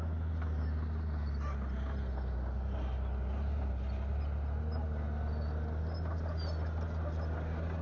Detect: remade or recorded recorded